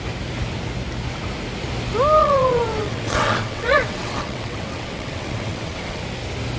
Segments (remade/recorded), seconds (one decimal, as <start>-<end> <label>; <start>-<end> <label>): 0.0-2.2 recorded; 2.2-6.0 remade; 6.0-6.6 recorded